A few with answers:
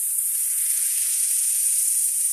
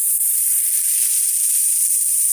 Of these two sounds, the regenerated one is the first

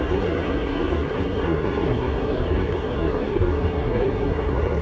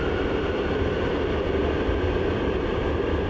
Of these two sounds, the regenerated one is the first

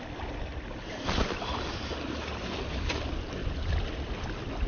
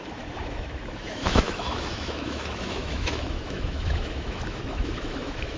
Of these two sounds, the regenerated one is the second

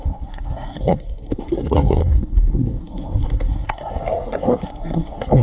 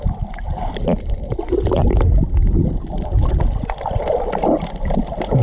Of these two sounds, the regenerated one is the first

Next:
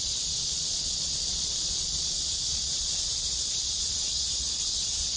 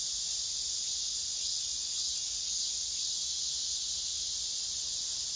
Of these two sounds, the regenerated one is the first